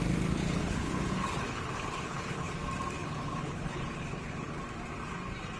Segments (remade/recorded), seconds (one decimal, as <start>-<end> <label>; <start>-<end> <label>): 0.0-0.4 recorded; 0.4-2.5 remade; 2.5-3.0 recorded; 3.0-4.6 remade; 4.6-5.6 recorded